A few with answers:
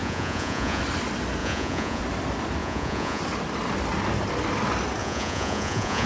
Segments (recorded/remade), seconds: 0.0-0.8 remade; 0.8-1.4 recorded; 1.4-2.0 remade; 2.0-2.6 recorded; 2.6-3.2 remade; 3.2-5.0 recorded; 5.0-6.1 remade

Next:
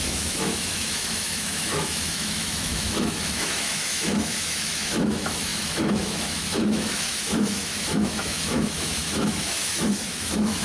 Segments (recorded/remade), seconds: 0.0-10.6 remade

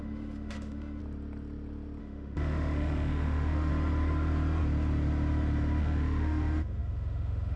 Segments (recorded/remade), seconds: 0.0-1.0 remade; 1.0-2.0 recorded; 2.0-3.7 remade; 3.7-5.8 recorded; 5.8-7.6 remade

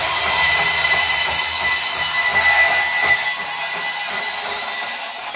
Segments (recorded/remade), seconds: 0.0-2.3 remade; 2.3-4.2 recorded; 4.2-5.4 remade

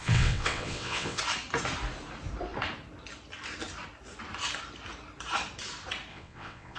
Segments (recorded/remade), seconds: 0.0-1.2 remade; 1.2-6.1 recorded; 6.1-6.8 remade